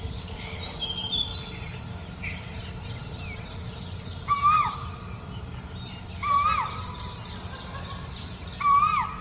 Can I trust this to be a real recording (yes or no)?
yes